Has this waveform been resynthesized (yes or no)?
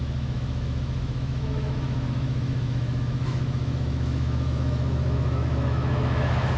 yes